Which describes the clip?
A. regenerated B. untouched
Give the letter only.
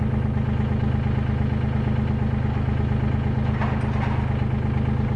B